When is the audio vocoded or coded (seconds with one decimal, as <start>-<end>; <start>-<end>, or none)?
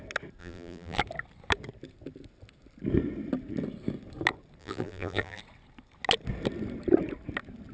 0.4-1.0; 4.6-5.4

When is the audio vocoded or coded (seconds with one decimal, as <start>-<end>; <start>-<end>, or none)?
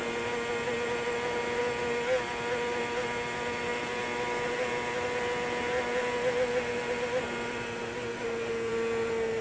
none